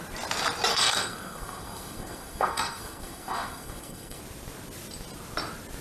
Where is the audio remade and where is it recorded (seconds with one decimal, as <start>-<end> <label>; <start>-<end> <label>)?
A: 0.0-0.7 recorded; 0.7-4.2 remade; 4.2-5.8 recorded

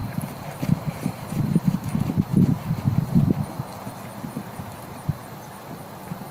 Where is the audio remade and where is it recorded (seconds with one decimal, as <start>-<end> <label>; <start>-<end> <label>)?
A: 0.0-1.3 remade; 1.3-6.3 recorded

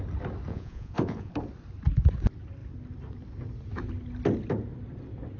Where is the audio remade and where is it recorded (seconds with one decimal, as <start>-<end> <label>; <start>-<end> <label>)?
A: 0.0-0.5 recorded; 0.5-1.3 remade; 1.3-5.4 recorded